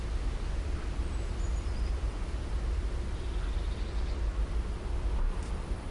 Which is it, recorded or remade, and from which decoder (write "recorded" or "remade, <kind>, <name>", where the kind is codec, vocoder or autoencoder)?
recorded